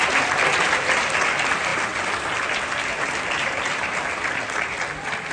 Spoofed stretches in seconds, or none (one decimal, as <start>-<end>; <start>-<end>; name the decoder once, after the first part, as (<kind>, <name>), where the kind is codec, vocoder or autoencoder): none